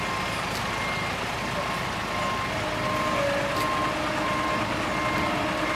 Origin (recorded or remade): recorded